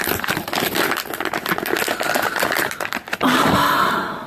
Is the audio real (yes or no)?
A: yes